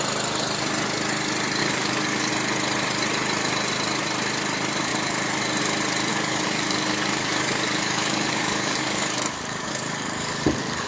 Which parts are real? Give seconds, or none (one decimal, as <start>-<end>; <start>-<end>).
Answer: 0.0-1.6; 2.3-6.1